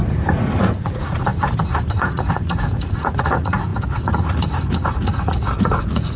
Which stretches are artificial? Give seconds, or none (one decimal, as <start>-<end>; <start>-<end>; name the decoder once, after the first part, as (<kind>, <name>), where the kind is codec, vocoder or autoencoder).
0.6-1.3 (vocoder, Vocos); 2.0-6.2